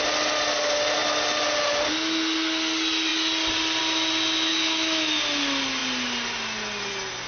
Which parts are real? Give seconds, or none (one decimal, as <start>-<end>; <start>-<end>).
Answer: 0.0-4.5; 5.2-7.3